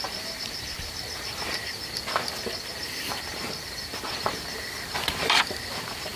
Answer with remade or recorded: remade